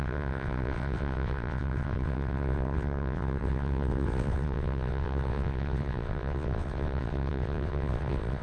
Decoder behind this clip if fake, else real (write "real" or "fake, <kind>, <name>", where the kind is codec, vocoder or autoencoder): fake, vocoder, WaveNeXt